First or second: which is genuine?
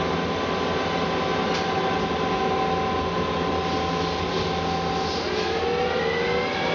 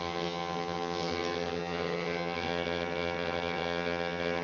first